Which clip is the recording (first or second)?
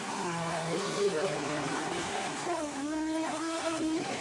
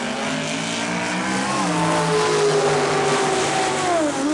second